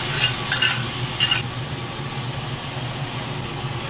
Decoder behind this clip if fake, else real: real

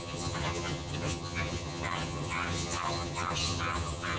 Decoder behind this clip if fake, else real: fake, vocoder, HiFi-GAN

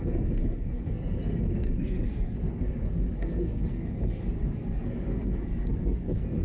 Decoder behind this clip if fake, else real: fake, codec, SNAC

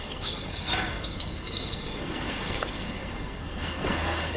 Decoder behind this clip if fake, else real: fake, codec, SNAC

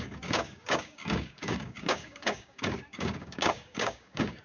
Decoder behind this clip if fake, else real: fake, codec, DAC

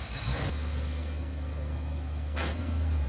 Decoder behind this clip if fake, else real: fake, codec, SNAC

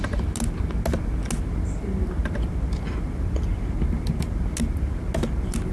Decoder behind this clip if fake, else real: real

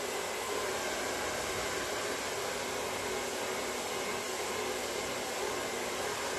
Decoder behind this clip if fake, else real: real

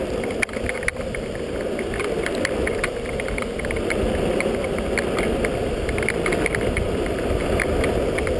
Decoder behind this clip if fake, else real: real